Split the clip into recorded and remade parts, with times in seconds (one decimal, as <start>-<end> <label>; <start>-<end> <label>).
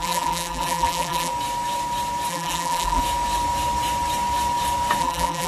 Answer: 0.0-1.3 remade; 1.3-2.3 recorded; 2.3-3.0 remade; 3.0-5.0 recorded; 5.0-5.5 remade